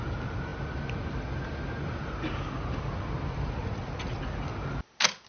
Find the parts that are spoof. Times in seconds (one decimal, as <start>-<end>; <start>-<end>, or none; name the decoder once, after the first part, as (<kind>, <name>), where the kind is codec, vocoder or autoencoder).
3.6-4.2 (vocoder, Vocos)